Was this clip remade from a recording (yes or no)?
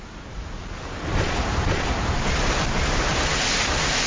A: no